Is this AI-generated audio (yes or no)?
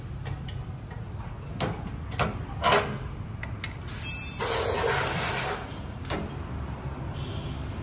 no